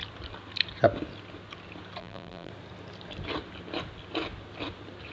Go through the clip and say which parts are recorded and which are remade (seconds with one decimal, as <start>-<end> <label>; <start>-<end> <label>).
0.0-2.0 recorded; 2.0-2.5 remade; 2.5-5.1 recorded